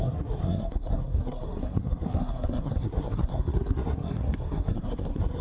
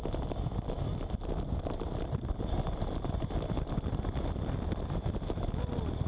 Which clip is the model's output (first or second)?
first